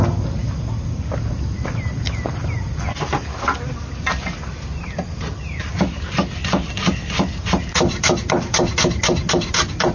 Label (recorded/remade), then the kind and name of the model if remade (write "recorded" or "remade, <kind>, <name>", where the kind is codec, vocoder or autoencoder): recorded